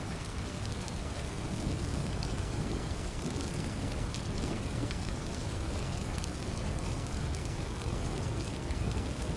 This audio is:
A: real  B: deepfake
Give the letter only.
B